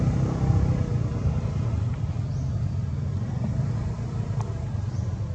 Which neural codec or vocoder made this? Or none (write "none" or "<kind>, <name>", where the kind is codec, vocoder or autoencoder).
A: none